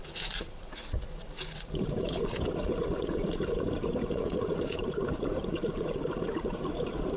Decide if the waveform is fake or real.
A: fake